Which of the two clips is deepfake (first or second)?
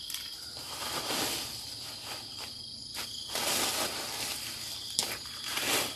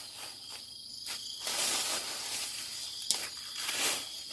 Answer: second